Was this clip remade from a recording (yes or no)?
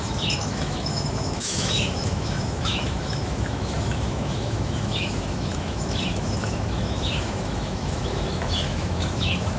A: yes